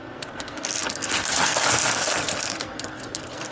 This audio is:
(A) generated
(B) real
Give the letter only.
A